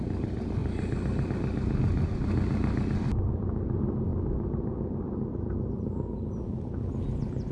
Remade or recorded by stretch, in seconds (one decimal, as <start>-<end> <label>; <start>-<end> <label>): 0.0-7.5 recorded